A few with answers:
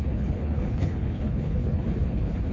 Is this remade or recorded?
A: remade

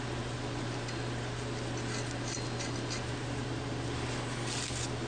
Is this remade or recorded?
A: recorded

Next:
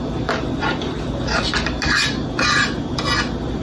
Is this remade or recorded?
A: recorded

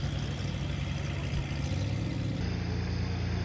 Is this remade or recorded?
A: recorded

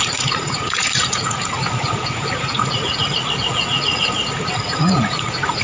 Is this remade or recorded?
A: remade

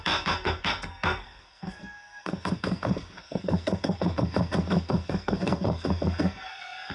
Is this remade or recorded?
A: remade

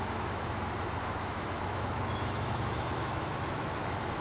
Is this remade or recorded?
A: remade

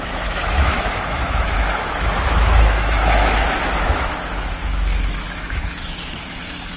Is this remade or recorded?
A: remade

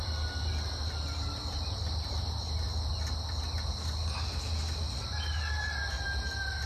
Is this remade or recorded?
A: recorded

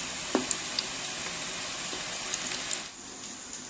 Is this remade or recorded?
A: recorded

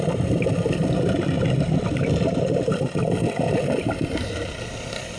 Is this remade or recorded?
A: recorded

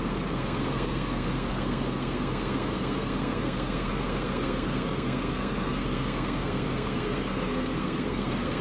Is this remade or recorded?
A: remade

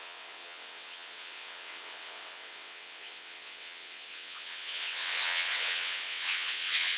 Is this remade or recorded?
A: remade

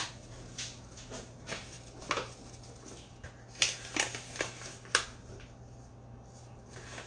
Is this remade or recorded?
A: recorded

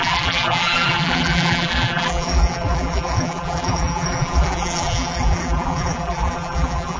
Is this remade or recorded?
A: remade